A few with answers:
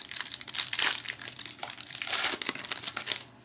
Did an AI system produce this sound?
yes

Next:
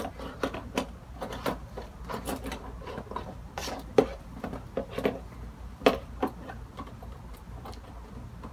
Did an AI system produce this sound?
yes